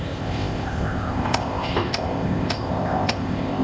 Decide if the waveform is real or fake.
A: fake